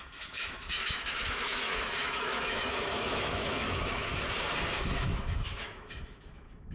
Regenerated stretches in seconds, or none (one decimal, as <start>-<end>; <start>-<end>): 0.0-4.1; 4.8-6.7